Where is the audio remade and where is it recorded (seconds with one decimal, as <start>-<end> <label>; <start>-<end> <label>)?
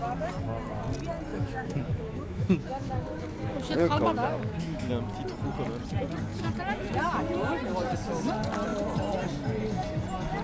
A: 0.0-1.3 recorded; 1.3-4.9 remade; 4.9-10.4 recorded